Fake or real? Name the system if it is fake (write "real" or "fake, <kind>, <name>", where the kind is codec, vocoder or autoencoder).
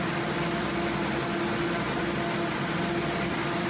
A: real